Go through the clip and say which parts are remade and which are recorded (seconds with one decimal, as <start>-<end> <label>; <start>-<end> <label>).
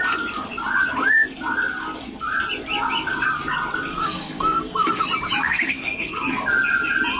0.0-3.9 recorded; 3.9-5.0 remade; 5.0-5.4 recorded; 5.4-6.3 remade; 6.3-7.2 recorded